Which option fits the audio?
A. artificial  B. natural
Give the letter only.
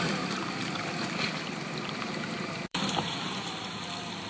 A